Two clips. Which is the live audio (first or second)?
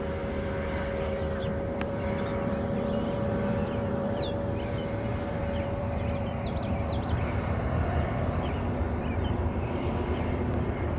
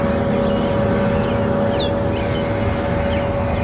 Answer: second